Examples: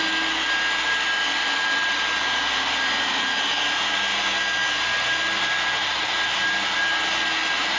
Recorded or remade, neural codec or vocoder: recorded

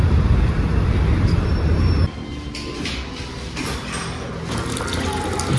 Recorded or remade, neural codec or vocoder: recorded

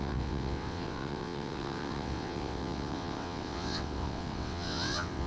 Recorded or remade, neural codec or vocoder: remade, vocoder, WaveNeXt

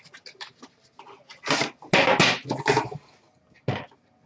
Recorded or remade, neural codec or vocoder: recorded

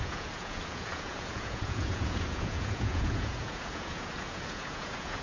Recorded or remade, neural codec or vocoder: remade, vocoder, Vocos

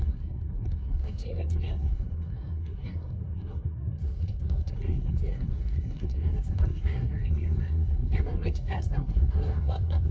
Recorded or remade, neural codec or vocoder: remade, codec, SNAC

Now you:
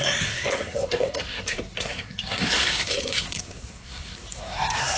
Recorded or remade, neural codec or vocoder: remade, codec, SNAC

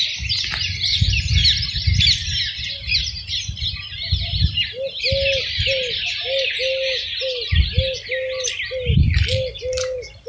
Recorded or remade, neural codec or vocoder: recorded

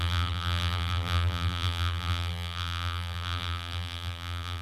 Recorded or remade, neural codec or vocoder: remade, vocoder, BigVGAN v2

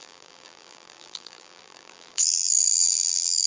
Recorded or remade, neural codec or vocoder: remade, vocoder, BigVGAN v2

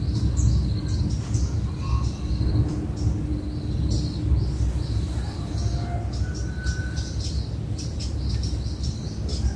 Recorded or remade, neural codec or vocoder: recorded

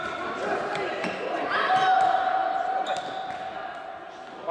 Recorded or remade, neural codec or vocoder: recorded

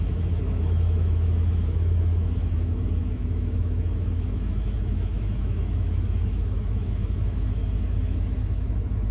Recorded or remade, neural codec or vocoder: remade, autoencoder, DAC-VAE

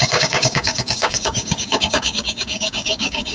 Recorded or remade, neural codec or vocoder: remade, codec, DAC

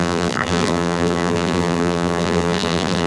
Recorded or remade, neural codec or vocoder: remade, vocoder, BigVGAN v2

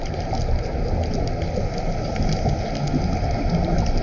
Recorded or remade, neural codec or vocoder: recorded